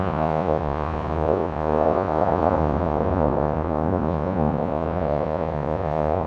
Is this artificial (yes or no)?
yes